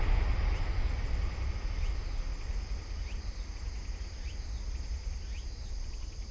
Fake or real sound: real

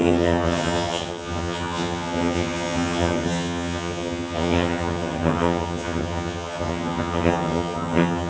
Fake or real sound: fake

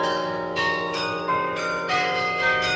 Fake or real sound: fake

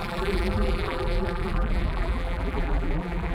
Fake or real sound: fake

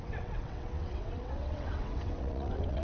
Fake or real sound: fake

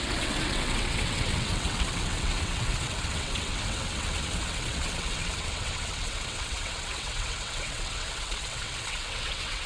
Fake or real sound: fake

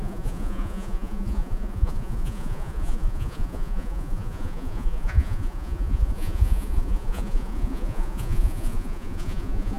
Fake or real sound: fake